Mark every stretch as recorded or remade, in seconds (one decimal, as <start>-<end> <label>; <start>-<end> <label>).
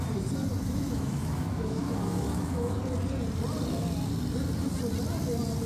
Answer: 0.0-0.5 recorded; 0.5-2.8 remade; 2.8-5.7 recorded